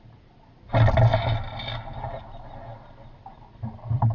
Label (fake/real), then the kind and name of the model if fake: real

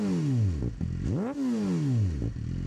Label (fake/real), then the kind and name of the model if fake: real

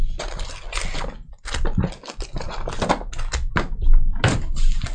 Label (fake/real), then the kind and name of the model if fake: real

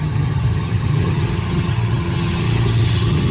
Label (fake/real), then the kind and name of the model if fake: fake, vocoder, HiFi-GAN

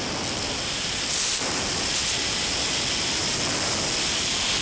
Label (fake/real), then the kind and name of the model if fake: real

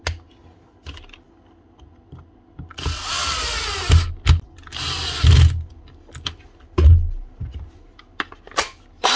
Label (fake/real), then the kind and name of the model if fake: real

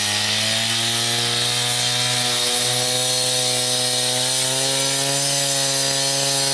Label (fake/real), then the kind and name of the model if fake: real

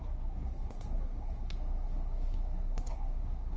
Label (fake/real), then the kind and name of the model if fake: fake, codec, SNAC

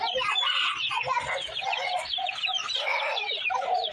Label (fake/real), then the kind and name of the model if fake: real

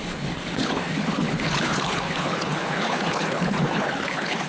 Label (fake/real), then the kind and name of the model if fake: fake, codec, HILCodec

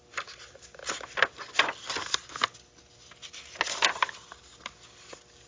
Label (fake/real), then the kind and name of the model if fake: real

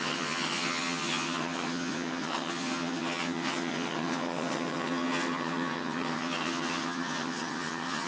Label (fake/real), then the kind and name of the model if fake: fake, vocoder, HiFi-GAN